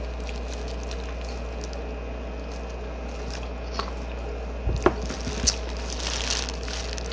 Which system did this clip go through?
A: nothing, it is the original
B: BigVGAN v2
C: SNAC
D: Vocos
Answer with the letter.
A